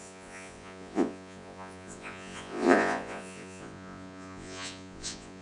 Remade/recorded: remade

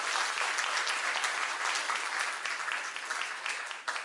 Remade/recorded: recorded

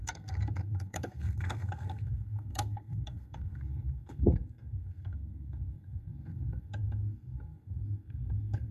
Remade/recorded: remade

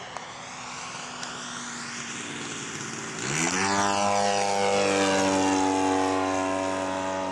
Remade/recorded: recorded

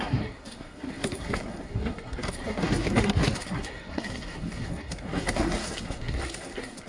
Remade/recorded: remade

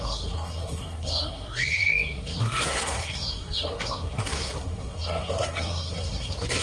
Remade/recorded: remade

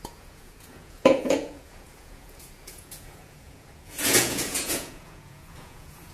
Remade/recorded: remade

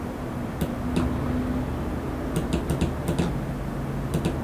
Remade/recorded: recorded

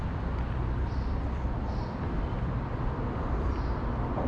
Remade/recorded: remade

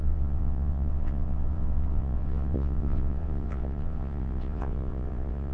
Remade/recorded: remade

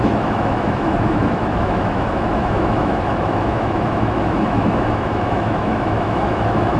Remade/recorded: remade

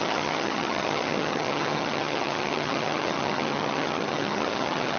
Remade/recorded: remade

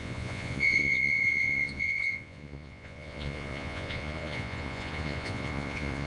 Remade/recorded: remade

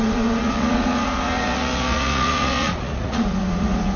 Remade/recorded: remade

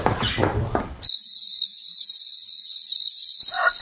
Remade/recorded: remade